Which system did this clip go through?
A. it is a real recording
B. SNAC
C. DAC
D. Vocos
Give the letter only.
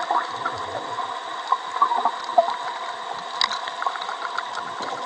A